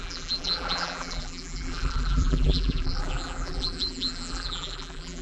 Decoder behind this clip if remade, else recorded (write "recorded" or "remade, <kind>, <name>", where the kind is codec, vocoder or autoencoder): remade, vocoder, BigVGAN v2